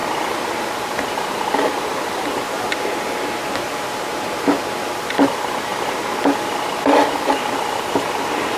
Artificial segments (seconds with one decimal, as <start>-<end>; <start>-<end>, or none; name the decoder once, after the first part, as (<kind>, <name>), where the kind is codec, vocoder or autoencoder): 0.0-5.7 (vocoder, BigVGAN v2); 8.1-8.6